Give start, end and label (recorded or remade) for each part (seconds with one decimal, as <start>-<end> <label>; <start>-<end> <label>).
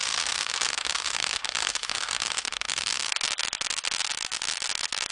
0.0-3.1 remade; 3.1-5.1 recorded